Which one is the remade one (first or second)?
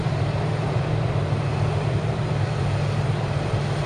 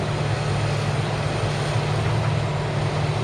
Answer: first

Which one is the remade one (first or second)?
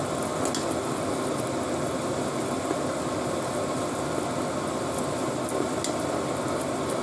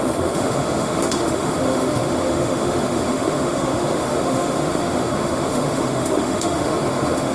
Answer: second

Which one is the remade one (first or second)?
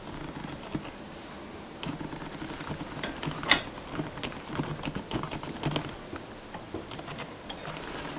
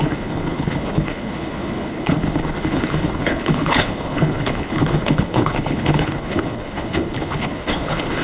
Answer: second